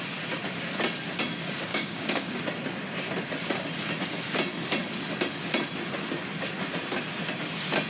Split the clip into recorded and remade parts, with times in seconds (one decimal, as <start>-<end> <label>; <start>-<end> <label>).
0.0-1.7 recorded; 1.7-2.4 remade; 2.4-7.9 recorded